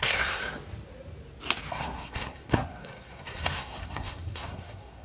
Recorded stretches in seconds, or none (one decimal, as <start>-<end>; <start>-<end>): 0.4-1.7